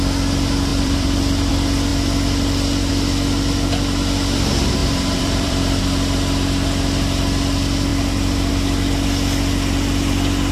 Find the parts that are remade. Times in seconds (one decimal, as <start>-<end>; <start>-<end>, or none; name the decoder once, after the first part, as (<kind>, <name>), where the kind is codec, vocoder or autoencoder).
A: 0.7-1.5 (vocoder, BigVGAN v2); 4.8-5.8